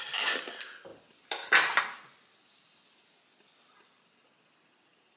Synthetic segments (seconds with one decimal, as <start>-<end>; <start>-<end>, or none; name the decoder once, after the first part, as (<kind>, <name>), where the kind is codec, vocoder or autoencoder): none

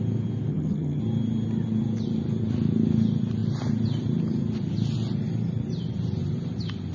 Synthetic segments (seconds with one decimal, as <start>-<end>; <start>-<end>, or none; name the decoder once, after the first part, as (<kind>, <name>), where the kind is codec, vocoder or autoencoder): 0.5-1.0 (vocoder, HiFi-GAN)

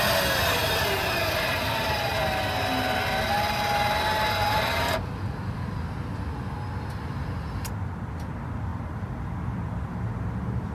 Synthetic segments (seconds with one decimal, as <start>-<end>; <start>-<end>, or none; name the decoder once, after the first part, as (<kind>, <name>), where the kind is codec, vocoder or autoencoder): 4.4-6.0 (vocoder, BigVGAN v2); 8.7-9.3

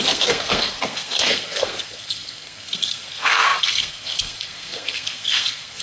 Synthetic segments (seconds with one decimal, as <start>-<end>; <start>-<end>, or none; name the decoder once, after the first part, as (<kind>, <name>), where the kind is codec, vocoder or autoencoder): 0.0-5.8 (codec, SNAC)